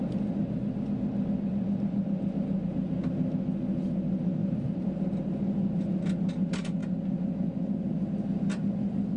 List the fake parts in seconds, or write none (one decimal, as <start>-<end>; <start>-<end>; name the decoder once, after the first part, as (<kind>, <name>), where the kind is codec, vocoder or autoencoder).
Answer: 0.4-1.1 (vocoder, BigVGAN v2); 4.4-5.1; 6.8-7.6